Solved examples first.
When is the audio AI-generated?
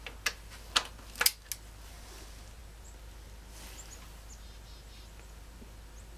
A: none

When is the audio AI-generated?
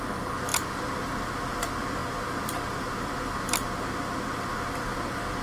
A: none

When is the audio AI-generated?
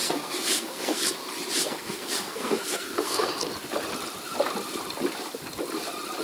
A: 0.0-1.1 (codec, SNAC); 1.6-3.3